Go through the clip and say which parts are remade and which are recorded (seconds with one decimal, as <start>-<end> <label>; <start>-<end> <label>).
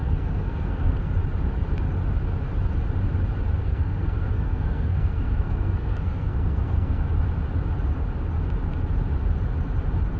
0.0-1.1 remade; 1.1-3.6 recorded; 3.6-7.1 remade; 7.1-10.2 recorded